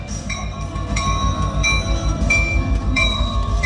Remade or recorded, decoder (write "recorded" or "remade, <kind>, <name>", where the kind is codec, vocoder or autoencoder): remade, codec, SNAC